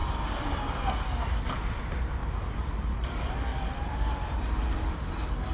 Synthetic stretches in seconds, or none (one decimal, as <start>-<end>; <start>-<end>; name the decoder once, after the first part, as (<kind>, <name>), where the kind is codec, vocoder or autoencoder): 2.2-2.7 (vocoder, BigVGAN v2); 3.5-4.4